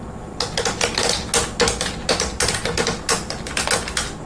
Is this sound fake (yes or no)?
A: no